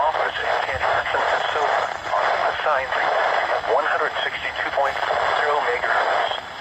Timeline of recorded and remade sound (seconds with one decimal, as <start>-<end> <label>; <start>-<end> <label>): 0.0-0.4 recorded; 0.4-1.2 remade; 1.2-2.4 recorded; 2.4-4.7 remade; 4.7-6.6 recorded